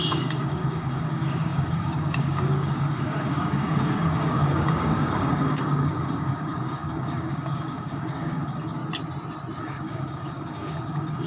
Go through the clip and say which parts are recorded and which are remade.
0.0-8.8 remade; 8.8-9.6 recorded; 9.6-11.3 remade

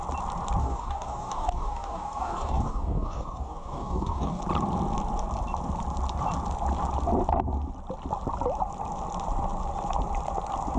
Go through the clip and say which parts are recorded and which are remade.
0.0-0.6 recorded; 0.6-4.4 remade; 4.4-10.8 recorded

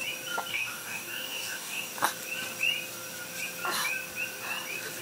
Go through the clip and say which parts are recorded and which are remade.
0.0-0.5 recorded; 0.5-1.9 remade; 1.9-5.0 recorded

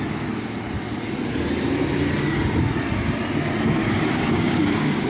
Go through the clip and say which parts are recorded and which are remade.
0.0-3.8 recorded; 3.8-5.1 remade

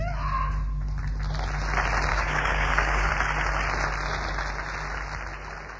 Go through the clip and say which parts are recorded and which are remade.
0.0-2.1 recorded; 2.1-3.1 remade; 3.1-5.8 recorded